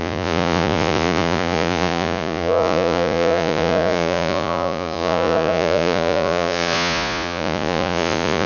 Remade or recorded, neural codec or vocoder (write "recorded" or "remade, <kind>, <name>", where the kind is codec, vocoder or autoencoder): remade, vocoder, Vocos